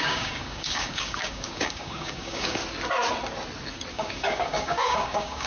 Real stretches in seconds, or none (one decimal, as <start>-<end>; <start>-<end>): 2.6-3.9

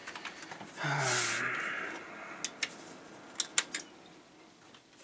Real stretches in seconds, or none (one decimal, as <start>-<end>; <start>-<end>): 0.0-5.0